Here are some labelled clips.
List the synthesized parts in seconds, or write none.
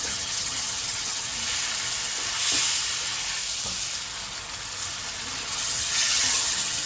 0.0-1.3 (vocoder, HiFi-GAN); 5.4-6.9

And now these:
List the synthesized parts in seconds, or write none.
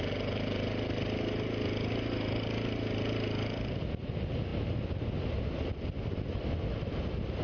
none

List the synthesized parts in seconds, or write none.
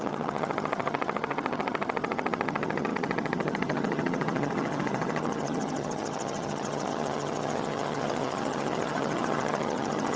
0.0-10.2 (vocoder, HiFi-GAN)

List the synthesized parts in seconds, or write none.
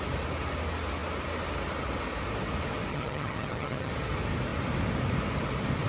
2.9-3.9 (vocoder, HiFi-GAN)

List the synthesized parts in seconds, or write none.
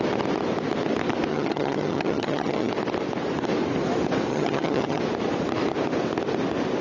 1.3-2.7 (vocoder, HiFi-GAN); 4.3-5.0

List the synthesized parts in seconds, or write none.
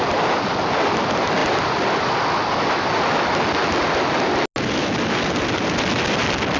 none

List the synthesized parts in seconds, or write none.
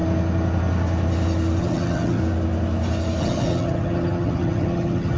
1.6-2.2 (vocoder, HiFi-GAN); 3.2-5.2